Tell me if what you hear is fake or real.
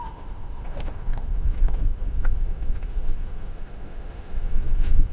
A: fake